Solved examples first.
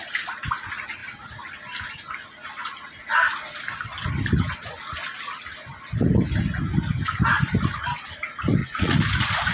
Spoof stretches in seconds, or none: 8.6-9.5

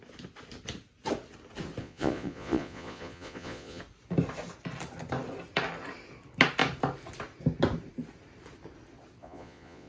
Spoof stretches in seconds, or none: 1.8-3.8; 9.2-9.9